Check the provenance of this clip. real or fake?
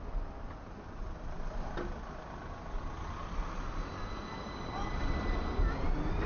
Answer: real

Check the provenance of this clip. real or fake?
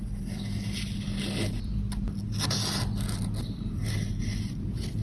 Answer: real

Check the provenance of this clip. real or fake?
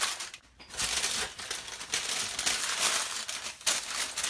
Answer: real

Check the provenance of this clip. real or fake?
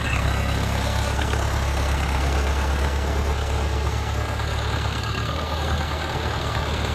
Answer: fake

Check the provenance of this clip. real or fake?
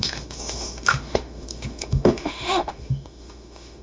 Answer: fake